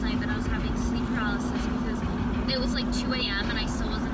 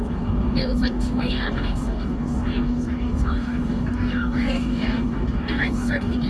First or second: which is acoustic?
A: first